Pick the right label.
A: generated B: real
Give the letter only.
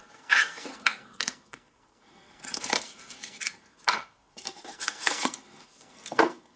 A